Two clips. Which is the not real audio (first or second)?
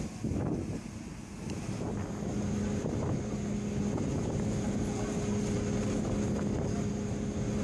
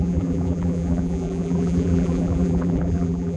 second